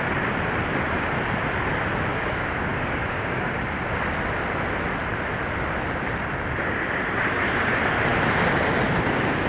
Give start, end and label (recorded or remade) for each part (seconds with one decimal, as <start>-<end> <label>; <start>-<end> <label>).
0.0-2.1 recorded; 2.1-3.5 remade; 3.5-9.5 recorded

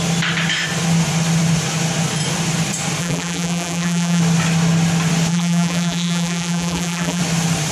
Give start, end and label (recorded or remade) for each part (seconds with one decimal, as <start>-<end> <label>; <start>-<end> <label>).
0.0-3.0 recorded; 3.0-4.2 remade; 4.2-5.3 recorded; 5.3-7.2 remade; 7.2-7.7 recorded

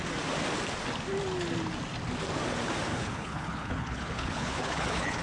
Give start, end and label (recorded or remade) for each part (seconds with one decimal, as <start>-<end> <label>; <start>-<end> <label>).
0.0-2.9 recorded; 2.9-5.2 remade

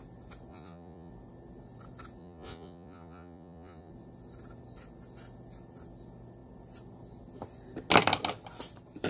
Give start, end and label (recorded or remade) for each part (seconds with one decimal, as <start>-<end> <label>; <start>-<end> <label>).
0.0-0.5 recorded; 0.5-1.1 remade; 1.1-2.2 recorded; 2.2-3.9 remade; 3.9-9.1 recorded